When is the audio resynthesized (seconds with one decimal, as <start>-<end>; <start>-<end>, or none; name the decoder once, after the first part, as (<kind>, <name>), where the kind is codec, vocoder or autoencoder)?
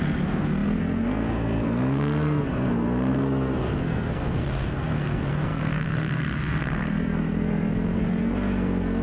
0.0-9.0 (codec, SNAC)